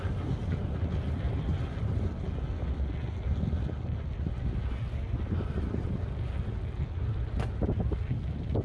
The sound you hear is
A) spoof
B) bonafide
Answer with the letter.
B